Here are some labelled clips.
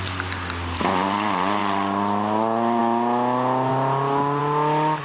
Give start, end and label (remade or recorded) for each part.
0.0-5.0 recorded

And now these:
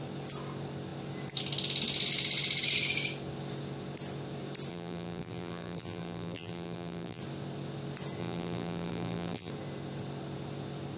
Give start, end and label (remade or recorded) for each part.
0.0-4.7 recorded; 4.7-7.2 remade; 7.2-8.2 recorded; 8.2-9.5 remade; 9.5-11.0 recorded